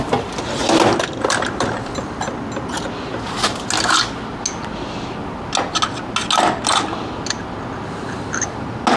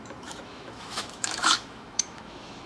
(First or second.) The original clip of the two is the first